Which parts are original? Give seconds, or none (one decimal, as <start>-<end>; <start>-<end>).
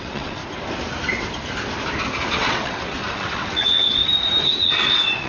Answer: 0.4-2.3; 4.0-4.6